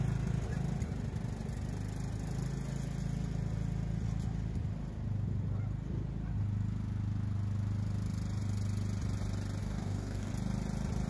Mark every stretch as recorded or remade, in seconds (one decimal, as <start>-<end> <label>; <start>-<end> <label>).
0.0-9.6 recorded; 9.6-10.3 remade; 10.3-11.1 recorded